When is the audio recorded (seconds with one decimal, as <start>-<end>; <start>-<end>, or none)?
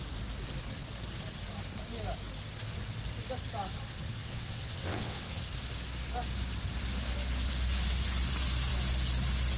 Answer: 0.0-4.2; 5.4-9.6